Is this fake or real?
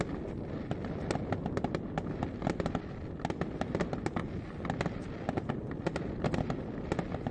real